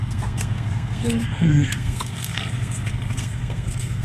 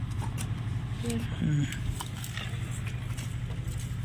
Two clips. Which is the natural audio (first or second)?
second